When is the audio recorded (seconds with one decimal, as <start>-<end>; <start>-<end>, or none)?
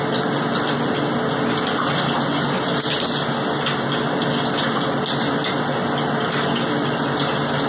0.0-7.7